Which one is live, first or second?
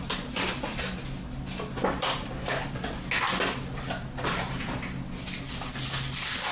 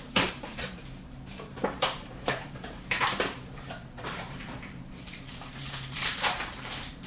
first